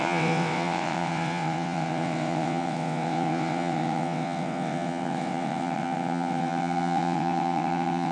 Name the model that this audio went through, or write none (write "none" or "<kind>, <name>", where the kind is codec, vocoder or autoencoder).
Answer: vocoder, WaveNeXt